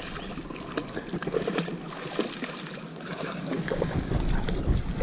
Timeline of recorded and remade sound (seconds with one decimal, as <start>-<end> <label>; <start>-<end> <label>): 0.0-2.9 recorded; 2.9-4.1 remade; 4.1-5.0 recorded